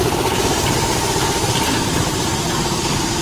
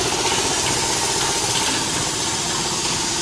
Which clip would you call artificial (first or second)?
first